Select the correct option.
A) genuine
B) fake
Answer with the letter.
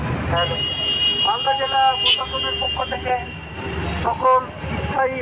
A